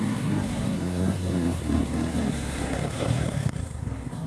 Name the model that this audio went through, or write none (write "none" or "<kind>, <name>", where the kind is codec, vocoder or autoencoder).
codec, SNAC